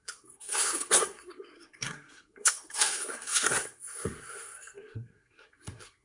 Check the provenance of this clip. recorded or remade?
remade